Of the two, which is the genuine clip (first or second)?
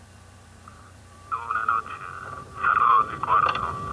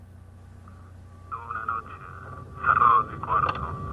second